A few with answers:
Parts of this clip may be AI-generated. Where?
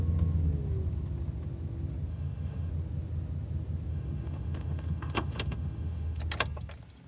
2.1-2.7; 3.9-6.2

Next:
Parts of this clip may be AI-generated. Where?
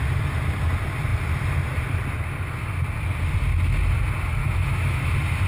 4.4-5.1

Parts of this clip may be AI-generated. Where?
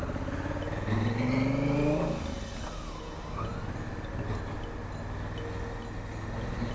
none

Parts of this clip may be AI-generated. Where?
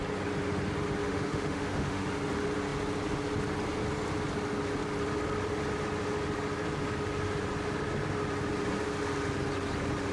1.0-2.1